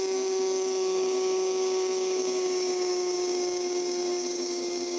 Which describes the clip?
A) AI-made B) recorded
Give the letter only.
A